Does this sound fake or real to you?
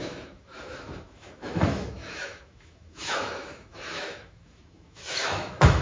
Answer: fake